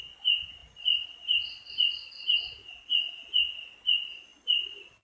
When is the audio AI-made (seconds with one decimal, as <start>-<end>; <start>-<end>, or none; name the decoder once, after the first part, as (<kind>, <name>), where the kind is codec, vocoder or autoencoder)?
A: 0.6-2.1 (vocoder, BigVGAN v2); 4.3-5.0